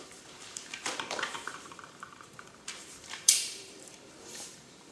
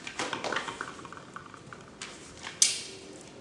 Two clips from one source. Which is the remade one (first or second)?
first